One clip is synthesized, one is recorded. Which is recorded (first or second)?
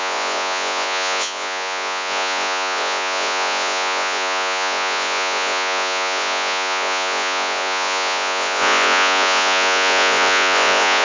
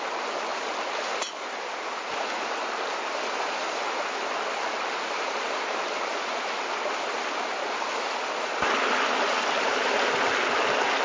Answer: second